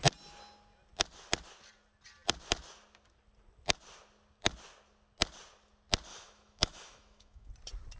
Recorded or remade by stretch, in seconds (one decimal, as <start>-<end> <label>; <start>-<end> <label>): 0.0-6.1 recorded; 6.1-7.5 remade; 7.5-8.0 recorded